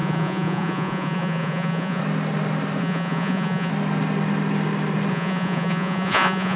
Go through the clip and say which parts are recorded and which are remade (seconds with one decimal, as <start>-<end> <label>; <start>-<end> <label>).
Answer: 0.0-2.0 remade; 2.0-2.8 recorded; 2.8-3.7 remade; 3.7-5.1 recorded; 5.1-6.6 remade